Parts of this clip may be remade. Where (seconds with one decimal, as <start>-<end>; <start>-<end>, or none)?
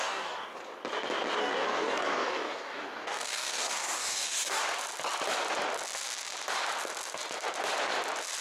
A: 0.0-0.6; 1.4-4.6